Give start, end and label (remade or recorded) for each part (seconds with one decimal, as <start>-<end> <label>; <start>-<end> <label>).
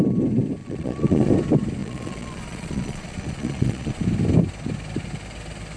0.0-0.6 recorded; 0.6-1.3 remade; 1.3-1.8 recorded; 1.8-4.0 remade; 4.0-5.8 recorded